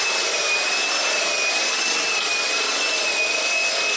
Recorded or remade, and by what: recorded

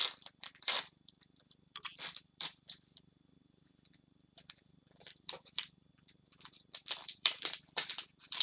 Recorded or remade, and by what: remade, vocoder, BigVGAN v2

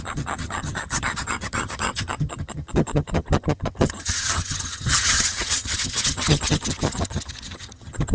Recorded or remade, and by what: remade, vocoder, HiFi-GAN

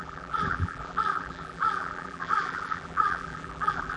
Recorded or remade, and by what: remade, vocoder, BigVGAN v2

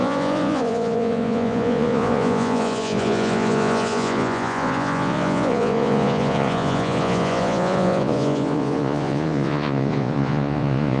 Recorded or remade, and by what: remade, vocoder, Vocos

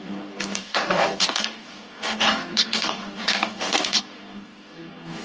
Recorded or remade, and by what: remade, codec, DAC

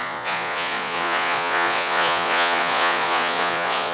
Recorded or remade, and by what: remade, vocoder, Vocos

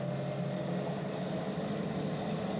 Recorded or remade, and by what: recorded